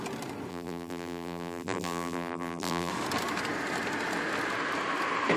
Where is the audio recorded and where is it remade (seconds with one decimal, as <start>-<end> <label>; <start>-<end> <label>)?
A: 0.0-0.5 recorded; 0.5-2.9 remade; 2.9-5.4 recorded